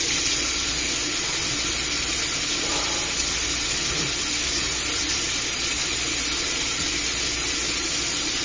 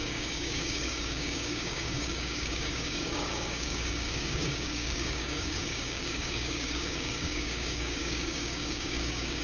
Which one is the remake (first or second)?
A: second